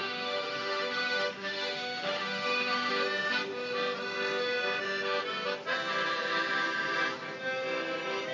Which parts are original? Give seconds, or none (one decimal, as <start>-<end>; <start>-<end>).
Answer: 2.9-8.3